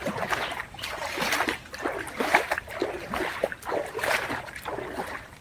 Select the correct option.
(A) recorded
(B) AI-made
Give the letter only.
A